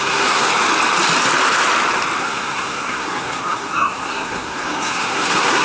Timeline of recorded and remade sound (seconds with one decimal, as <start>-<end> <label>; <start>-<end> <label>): 0.0-0.5 remade; 0.5-2.2 recorded; 2.2-5.6 remade

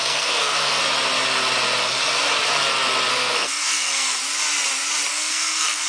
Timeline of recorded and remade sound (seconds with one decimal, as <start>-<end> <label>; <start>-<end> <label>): 0.0-0.8 remade; 0.8-3.1 recorded; 3.1-4.2 remade; 4.2-5.1 recorded; 5.1-5.9 remade

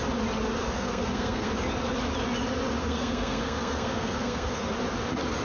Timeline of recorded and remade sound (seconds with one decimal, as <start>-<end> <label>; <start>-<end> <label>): 0.0-0.6 recorded; 0.6-1.5 remade; 1.5-2.8 recorded; 2.8-4.7 remade; 4.7-5.4 recorded

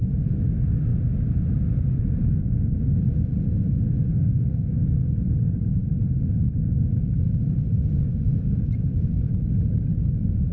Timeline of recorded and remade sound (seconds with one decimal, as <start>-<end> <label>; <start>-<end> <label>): 0.0-4.1 recorded; 4.1-4.7 remade; 4.7-10.5 recorded

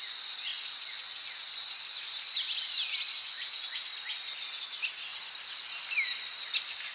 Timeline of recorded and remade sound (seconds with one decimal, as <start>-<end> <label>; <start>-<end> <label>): 0.0-6.9 recorded